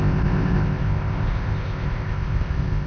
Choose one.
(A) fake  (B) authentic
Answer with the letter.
A